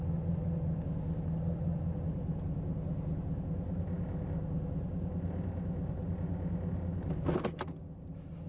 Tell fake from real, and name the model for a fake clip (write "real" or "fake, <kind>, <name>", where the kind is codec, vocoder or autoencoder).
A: real